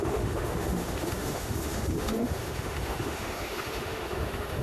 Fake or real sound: fake